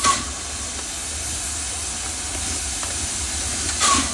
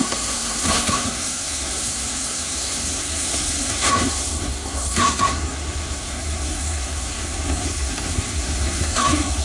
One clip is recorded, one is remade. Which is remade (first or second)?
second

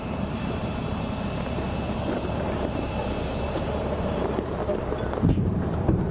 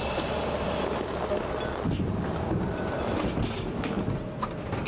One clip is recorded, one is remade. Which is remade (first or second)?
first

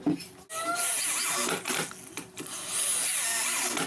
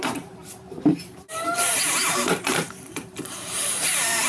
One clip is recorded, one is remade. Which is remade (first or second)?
second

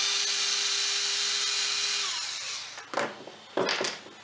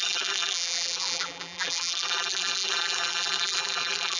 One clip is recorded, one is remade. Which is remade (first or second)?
second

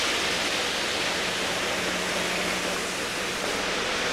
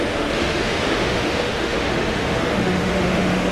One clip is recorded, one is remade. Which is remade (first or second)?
second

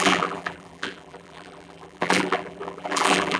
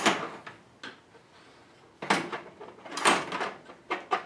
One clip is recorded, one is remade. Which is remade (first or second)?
first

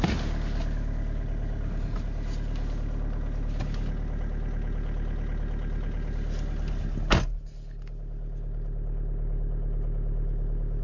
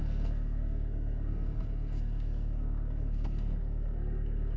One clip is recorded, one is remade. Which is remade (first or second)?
second